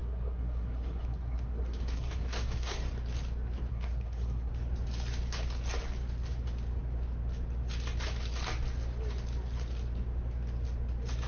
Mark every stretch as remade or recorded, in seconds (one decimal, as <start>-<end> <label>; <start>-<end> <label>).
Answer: 0.0-2.9 remade; 2.9-3.7 recorded; 3.7-4.5 remade; 4.5-11.3 recorded